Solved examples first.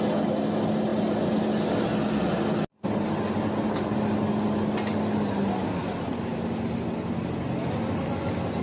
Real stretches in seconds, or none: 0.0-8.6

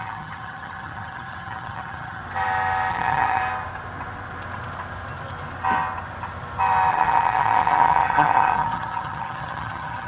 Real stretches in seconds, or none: 2.2-2.9; 3.4-6.9

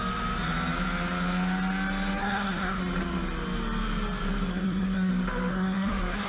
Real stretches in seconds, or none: 0.0-2.2; 2.8-4.5; 5.1-5.5

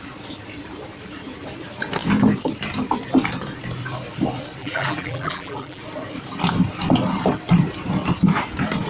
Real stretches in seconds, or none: 0.0-4.6; 5.8-8.9